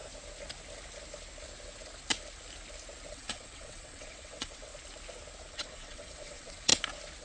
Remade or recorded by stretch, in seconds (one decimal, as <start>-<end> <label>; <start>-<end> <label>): 0.0-3.1 recorded; 3.1-4.7 remade; 4.7-5.5 recorded; 5.5-6.7 remade; 6.7-7.2 recorded